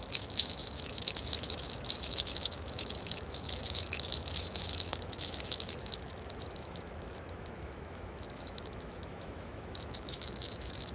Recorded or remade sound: remade